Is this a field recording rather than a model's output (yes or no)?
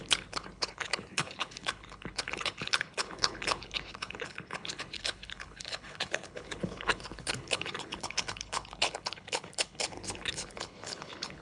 no